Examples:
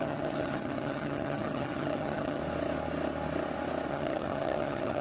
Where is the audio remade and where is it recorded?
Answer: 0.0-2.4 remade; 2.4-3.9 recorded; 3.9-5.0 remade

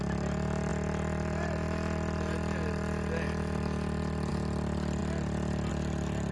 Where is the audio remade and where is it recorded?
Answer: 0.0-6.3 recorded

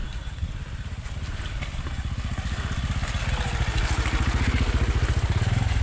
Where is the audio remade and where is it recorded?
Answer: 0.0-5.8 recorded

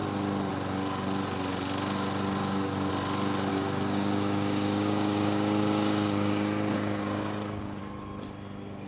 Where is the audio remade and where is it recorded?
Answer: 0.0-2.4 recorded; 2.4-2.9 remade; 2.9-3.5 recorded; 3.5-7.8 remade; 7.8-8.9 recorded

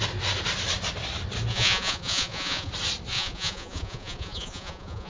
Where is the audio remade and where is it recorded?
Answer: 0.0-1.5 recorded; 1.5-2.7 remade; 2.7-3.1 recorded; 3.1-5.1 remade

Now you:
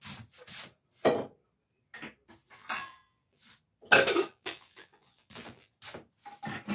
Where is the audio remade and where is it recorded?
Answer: 0.0-2.6 recorded; 2.6-3.4 remade; 3.4-4.3 recorded; 4.3-5.7 remade; 5.7-6.7 recorded